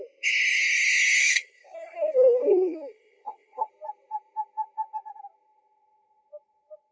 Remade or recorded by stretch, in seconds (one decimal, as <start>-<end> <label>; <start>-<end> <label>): 0.0-1.2 recorded; 1.2-3.7 remade; 3.7-6.9 recorded